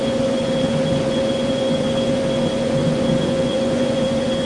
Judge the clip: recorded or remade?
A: remade